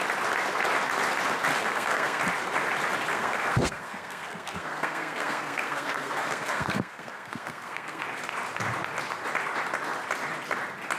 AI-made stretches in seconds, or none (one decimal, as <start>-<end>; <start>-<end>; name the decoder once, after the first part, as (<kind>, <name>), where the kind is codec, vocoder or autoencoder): 1.5-2.2 (codec, SNAC); 3.1-8.0